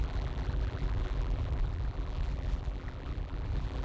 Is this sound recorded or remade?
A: remade